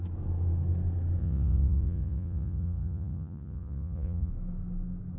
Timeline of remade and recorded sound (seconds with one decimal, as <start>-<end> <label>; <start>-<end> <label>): 0.0-1.2 recorded; 1.2-4.3 remade; 4.3-5.2 recorded